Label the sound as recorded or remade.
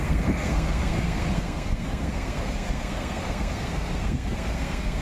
remade